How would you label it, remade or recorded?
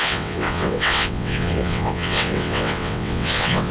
remade